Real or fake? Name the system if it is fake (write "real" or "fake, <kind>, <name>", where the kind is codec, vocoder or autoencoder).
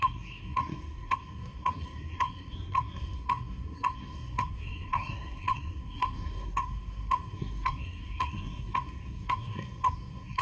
fake, codec, SNAC